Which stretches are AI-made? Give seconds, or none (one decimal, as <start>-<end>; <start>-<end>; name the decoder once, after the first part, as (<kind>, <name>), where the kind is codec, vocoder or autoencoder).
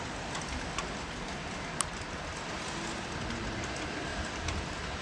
none